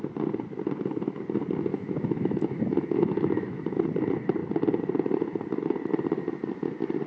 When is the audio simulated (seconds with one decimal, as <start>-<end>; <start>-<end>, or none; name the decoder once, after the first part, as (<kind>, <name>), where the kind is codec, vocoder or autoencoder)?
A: 1.7-3.8 (autoencoder, DAC-VAE)